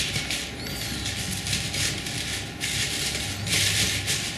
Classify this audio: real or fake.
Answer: real